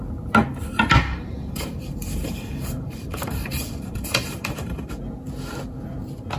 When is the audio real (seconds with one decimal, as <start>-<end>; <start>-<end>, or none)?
0.0-1.1; 4.9-6.4